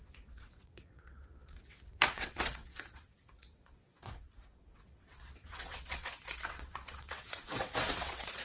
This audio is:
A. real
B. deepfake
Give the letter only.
B